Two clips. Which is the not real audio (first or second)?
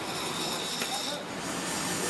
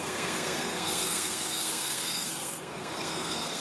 second